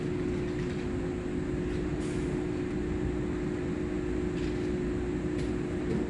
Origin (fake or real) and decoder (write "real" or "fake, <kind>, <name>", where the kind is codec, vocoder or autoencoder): real